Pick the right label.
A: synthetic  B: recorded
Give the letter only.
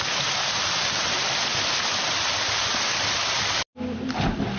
B